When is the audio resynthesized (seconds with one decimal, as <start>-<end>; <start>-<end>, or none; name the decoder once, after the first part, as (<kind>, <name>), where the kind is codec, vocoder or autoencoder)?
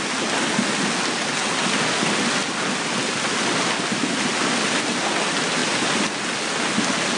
none